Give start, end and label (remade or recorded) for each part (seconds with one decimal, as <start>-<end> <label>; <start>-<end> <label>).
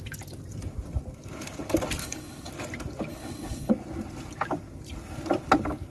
0.0-2.0 recorded; 2.0-2.5 remade; 2.5-3.1 recorded; 3.1-3.7 remade; 3.7-5.9 recorded